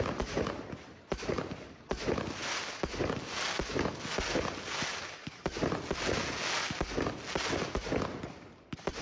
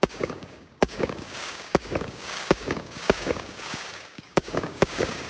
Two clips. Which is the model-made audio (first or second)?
second